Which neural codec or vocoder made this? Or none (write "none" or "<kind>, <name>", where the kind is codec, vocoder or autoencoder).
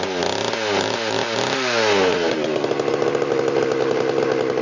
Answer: none